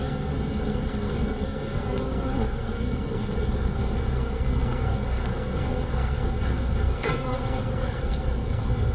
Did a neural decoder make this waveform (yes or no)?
yes